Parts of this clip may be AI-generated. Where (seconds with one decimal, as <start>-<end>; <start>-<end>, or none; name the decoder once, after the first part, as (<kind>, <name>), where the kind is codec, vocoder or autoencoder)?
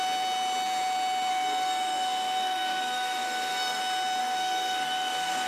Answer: 1.3-3.8 (codec, SNAC); 4.2-5.5